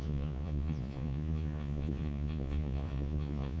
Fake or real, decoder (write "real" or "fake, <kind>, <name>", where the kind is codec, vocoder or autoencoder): fake, vocoder, Vocos